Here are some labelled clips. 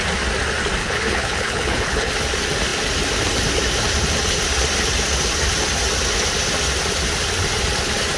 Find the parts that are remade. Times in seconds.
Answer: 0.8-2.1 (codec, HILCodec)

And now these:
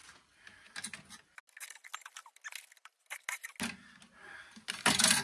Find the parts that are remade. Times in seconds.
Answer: none

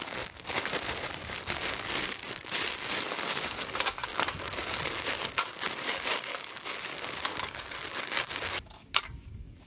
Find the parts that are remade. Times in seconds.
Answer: 0.0-0.7 (codec, DAC); 1.4-9.7

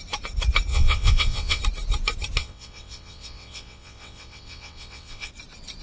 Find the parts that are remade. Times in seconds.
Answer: 0.7-1.6 (vocoder, WaveNeXt); 2.4-5.3

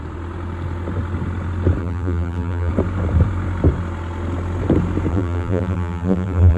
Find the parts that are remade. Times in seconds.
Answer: 1.8-2.7 (vocoder, BigVGAN v2); 5.1-6.6

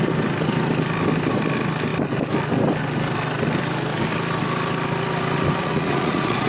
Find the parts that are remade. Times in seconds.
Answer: 5.6-6.5 (vocoder, Vocos)

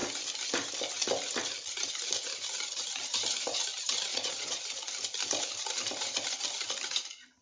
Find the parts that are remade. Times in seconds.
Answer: 4.1-4.6 (vocoder, Vocos)

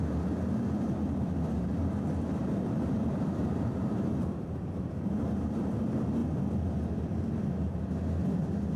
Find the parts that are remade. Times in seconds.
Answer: 2.4-5.8 (vocoder, BigVGAN v2)